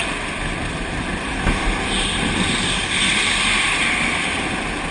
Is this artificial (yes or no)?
no